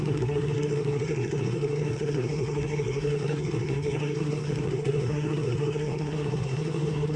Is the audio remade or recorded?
remade